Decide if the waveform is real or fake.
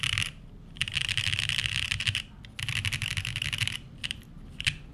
real